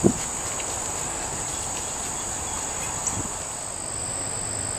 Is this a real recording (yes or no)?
yes